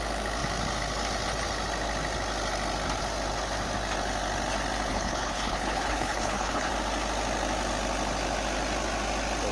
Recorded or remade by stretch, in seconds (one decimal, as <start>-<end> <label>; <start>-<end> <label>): 0.0-4.9 recorded; 4.9-6.7 remade; 6.7-9.5 recorded